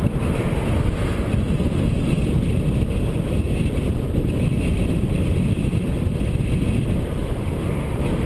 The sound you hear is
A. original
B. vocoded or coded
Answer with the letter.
A